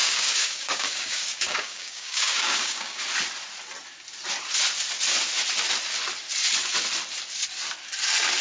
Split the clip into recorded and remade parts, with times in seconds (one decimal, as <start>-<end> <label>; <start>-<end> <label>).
0.0-3.0 remade; 3.0-8.4 recorded